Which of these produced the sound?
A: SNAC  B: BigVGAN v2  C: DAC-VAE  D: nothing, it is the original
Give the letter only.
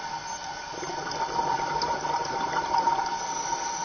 D